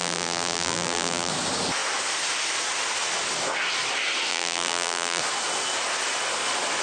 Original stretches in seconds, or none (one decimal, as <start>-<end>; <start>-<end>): 1.3-4.3; 5.2-6.8